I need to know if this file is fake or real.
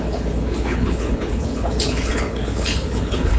fake